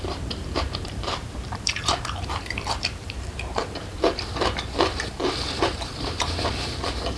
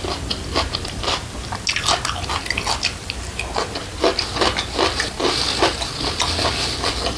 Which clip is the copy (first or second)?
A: first